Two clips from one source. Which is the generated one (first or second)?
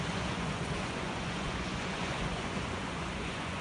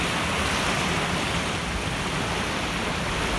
first